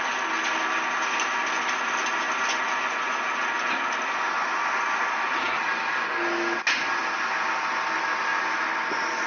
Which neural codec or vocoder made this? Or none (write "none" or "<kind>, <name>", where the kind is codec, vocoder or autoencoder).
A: none